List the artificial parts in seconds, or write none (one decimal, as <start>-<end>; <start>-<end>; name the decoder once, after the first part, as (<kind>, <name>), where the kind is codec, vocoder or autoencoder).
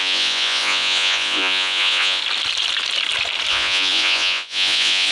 0.0-2.2 (vocoder, Vocos); 3.5-5.1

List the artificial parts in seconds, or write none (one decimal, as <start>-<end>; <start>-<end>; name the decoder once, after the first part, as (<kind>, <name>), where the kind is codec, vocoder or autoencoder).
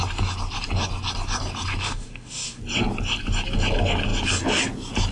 1.8-2.6 (autoencoder, DAC-VAE)